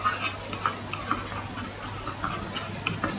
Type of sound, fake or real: real